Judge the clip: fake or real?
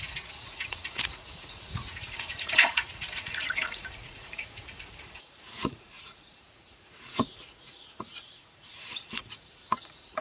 fake